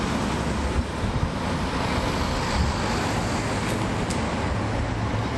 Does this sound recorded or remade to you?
recorded